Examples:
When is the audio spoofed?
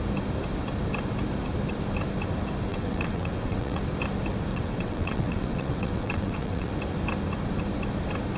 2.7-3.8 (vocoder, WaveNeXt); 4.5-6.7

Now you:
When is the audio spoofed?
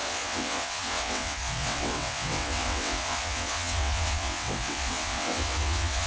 0.0-6.1 (vocoder, WaveNeXt)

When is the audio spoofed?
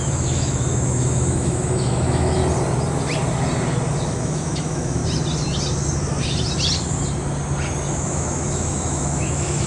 0.0-2.4 (autoencoder, DAC-VAE); 3.9-5.0; 7.9-9.7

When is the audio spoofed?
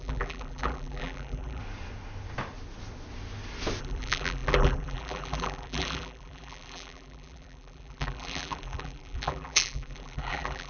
0.0-1.6 (vocoder, BigVGAN v2); 3.8-10.7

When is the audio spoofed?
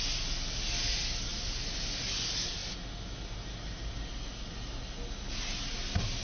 none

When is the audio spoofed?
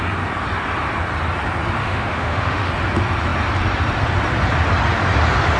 1.8-2.7 (autoencoder, DAC-VAE)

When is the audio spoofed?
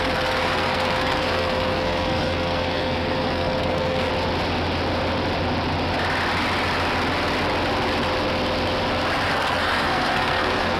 0.0-4.1 (codec, SNAC); 9.3-10.8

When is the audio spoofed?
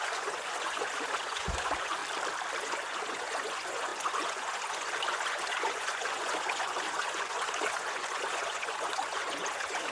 0.0-2.0 (vocoder, Vocos); 2.6-9.9